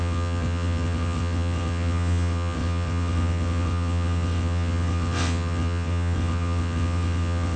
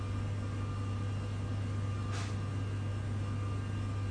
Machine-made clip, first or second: first